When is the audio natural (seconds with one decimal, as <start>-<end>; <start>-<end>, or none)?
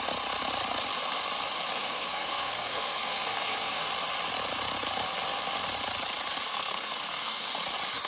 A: 0.0-1.8; 3.9-6.5; 7.5-8.1